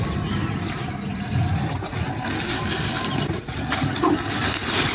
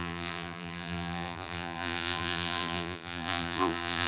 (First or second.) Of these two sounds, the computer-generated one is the second